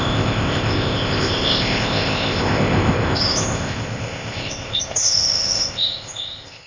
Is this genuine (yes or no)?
no